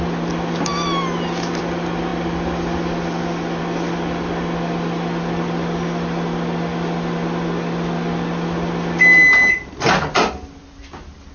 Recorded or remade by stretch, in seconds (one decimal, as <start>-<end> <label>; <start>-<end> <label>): 0.0-11.3 recorded